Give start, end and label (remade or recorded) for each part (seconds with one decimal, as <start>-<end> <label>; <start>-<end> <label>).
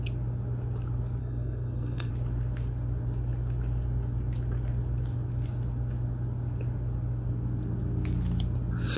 0.0-1.2 recorded; 1.2-2.1 remade; 2.1-9.0 recorded